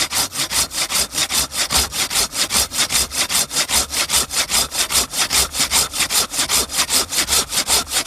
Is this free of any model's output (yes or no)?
yes